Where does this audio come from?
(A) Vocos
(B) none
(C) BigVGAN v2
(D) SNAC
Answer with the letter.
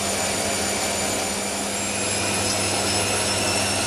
B